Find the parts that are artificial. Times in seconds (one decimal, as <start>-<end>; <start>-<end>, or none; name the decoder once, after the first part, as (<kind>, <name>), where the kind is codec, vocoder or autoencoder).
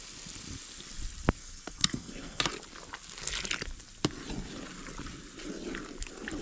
1.4-2.4 (codec, SNAC)